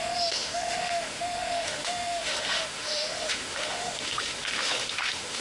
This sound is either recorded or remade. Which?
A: remade